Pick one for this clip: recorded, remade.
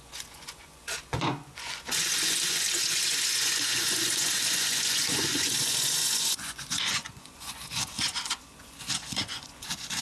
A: remade